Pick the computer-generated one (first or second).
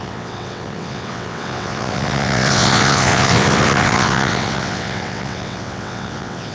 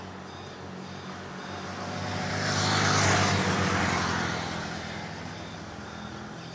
first